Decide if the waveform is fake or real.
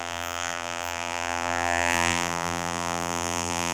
fake